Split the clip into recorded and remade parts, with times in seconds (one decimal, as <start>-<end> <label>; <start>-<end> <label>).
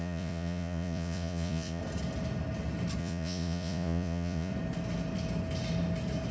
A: 0.0-1.8 remade; 1.8-3.0 recorded; 3.0-4.5 remade; 4.5-6.3 recorded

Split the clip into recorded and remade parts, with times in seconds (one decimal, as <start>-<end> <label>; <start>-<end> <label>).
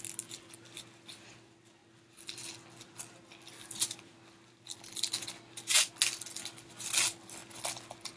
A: 0.0-8.2 recorded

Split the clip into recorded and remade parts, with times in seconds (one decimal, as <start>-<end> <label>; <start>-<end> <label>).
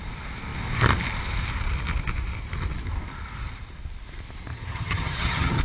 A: 0.0-4.5 recorded; 4.5-5.6 remade